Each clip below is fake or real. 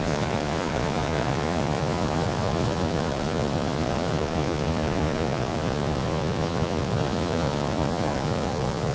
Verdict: fake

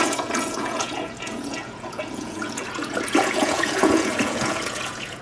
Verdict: fake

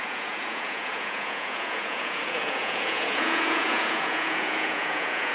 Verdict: fake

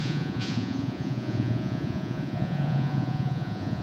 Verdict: fake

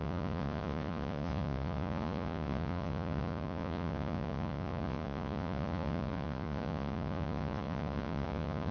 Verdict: fake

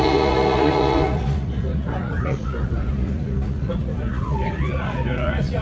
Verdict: fake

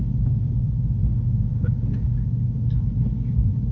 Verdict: real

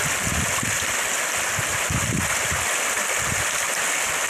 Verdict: real